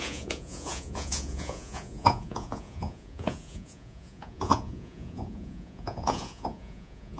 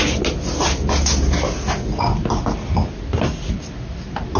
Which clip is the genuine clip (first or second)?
second